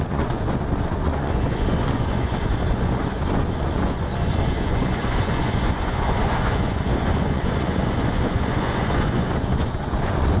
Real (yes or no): no